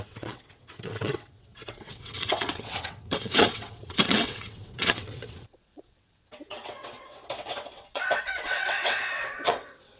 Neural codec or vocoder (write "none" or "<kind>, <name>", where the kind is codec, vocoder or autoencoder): vocoder, WaveNeXt